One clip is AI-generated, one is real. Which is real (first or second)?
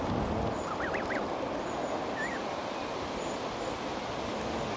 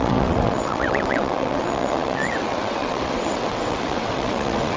first